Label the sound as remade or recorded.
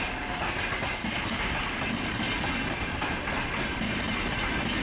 recorded